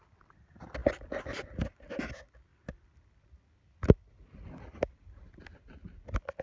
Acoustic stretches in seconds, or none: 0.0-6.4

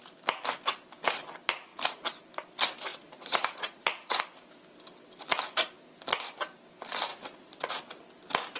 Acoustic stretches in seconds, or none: 0.0-2.9; 4.2-7.1; 7.7-8.6

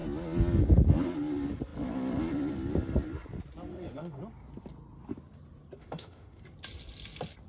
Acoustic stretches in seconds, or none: 0.0-3.7; 4.2-5.8; 6.4-7.5

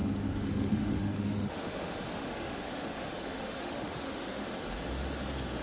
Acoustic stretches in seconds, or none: 4.4-5.6

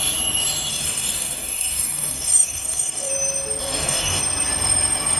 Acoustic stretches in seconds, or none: 0.0-0.7; 3.1-3.6; 4.2-5.2

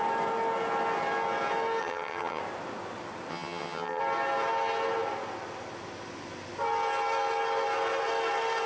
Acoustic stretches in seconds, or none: 0.0-1.8; 2.4-3.3; 4.0-8.7

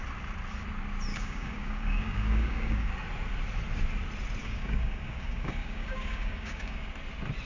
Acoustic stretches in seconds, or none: 0.0-1.1; 2.9-4.4; 6.9-7.5